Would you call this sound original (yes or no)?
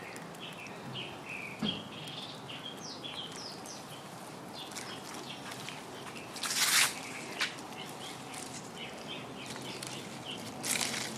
yes